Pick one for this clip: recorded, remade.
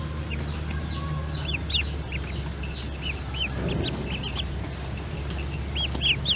recorded